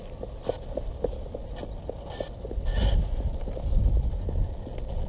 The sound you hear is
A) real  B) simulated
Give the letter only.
A